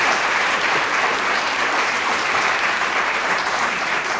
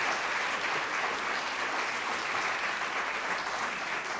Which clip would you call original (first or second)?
second